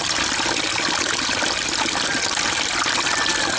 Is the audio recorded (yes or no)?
yes